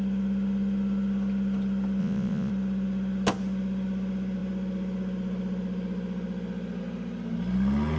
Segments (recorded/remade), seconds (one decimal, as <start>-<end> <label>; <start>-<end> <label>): 0.0-2.0 recorded; 2.0-2.5 remade; 2.5-8.0 recorded